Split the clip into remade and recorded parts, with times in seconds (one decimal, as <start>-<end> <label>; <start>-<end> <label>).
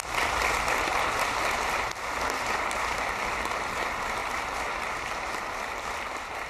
0.0-6.5 recorded